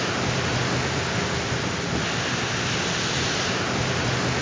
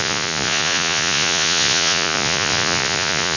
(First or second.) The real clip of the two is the first